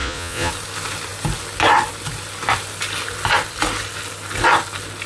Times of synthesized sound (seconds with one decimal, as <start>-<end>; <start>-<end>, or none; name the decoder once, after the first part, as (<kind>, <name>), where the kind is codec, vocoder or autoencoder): 0.0-0.5 (vocoder, Vocos)